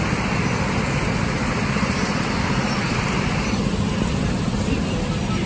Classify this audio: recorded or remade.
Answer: recorded